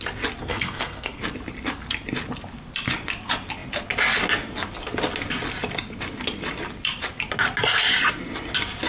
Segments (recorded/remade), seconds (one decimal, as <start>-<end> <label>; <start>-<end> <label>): 0.0-0.4 recorded; 0.4-1.2 remade; 1.2-8.9 recorded